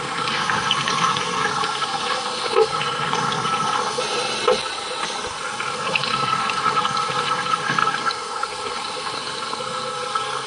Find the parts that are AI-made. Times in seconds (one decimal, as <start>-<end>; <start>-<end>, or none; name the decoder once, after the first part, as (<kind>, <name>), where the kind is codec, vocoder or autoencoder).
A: 0.0-4.0 (codec, SNAC); 5.3-10.5